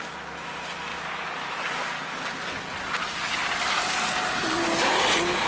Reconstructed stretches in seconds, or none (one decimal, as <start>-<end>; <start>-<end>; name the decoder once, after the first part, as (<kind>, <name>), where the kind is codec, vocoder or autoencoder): none